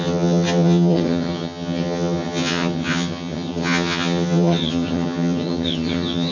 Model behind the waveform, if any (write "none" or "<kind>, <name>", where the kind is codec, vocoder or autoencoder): vocoder, HiFi-GAN